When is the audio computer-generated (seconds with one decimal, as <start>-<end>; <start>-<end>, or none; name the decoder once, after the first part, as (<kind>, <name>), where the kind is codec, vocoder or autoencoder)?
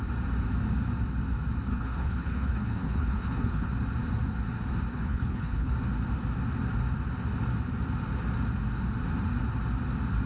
1.7-3.7 (codec, HILCodec); 4.9-5.7